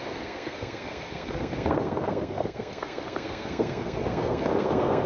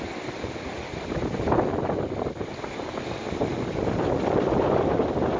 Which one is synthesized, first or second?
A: first